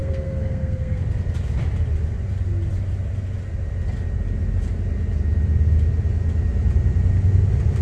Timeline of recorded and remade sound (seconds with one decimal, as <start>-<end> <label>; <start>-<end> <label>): 0.0-1.0 remade; 1.0-7.8 recorded